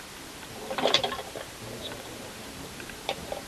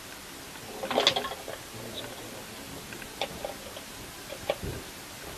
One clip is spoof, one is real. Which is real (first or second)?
second